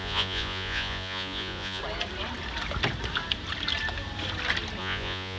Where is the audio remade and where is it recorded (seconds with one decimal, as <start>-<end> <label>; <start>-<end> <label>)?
0.0-1.8 remade; 1.8-4.8 recorded; 4.8-5.4 remade

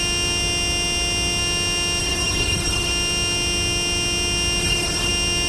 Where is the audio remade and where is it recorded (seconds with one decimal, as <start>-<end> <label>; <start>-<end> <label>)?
0.0-2.0 recorded; 2.0-2.9 remade; 2.9-4.6 recorded; 4.6-5.1 remade; 5.1-5.5 recorded

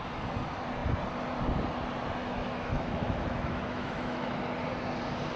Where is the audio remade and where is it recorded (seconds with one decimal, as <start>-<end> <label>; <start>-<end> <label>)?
0.0-2.2 recorded; 2.2-4.3 remade; 4.3-5.4 recorded